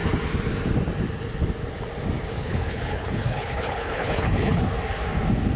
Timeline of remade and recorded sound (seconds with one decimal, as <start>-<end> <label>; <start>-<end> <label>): 0.0-2.4 recorded; 2.4-4.6 remade; 4.6-5.6 recorded

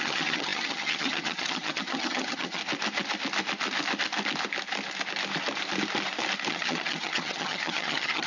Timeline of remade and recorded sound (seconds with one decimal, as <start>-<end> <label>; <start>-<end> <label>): 0.0-2.6 remade; 2.6-6.5 recorded; 6.5-8.3 remade